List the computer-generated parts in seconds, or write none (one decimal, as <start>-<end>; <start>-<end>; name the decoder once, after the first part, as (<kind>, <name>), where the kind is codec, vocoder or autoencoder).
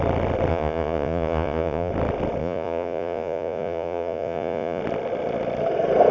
0.5-1.9 (vocoder, Vocos); 2.4-4.8